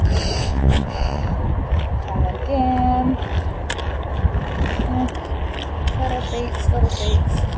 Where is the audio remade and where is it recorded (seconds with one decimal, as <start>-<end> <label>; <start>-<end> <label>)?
0.0-0.4 recorded; 0.4-1.2 remade; 1.2-7.6 recorded